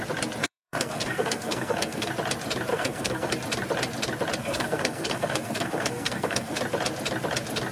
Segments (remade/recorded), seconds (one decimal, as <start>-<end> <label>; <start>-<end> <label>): 0.0-0.4 recorded; 0.4-2.1 remade; 2.1-2.7 recorded; 2.7-3.3 remade; 3.3-4.4 recorded; 4.4-6.6 remade; 6.6-7.7 recorded